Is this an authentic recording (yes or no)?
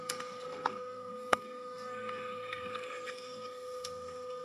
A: no